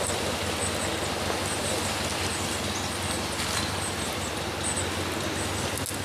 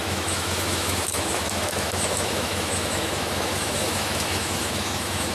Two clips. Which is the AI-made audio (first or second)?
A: second